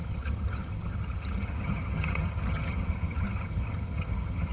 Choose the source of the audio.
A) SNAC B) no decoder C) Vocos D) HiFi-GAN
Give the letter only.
D